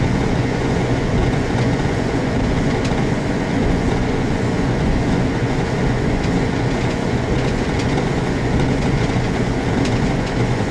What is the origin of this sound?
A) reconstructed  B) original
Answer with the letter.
A